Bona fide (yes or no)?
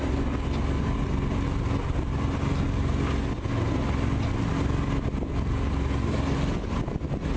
yes